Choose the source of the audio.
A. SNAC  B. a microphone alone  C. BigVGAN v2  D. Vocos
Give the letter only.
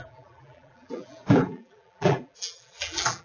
C